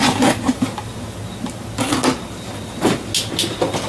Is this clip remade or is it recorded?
recorded